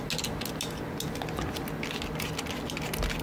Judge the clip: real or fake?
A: real